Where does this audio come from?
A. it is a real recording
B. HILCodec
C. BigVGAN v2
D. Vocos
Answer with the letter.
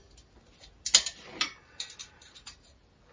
A